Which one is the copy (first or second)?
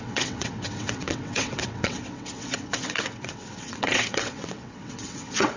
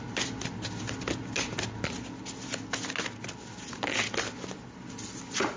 first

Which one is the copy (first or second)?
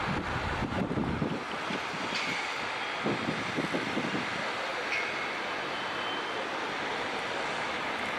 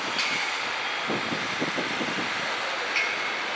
first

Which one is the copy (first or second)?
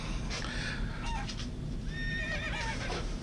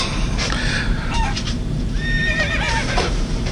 second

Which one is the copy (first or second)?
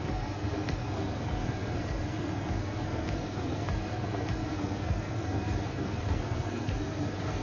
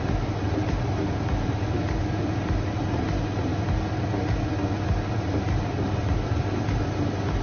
first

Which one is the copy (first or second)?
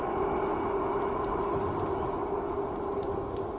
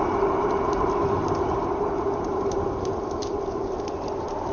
second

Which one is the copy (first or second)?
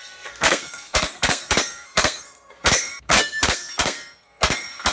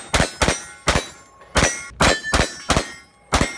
first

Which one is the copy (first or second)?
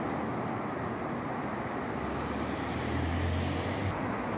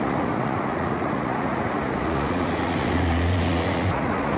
second